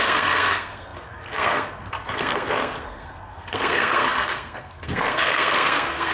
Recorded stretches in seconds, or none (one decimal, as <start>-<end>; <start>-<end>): none